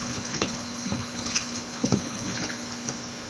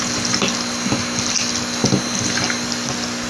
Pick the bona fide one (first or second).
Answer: second